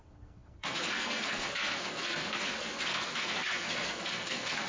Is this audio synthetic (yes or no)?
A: yes